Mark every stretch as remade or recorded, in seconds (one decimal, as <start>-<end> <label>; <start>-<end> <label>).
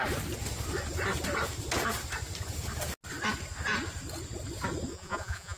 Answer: 0.0-4.9 recorded; 4.9-5.6 remade